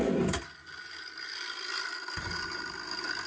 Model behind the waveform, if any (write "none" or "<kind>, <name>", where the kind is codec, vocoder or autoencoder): none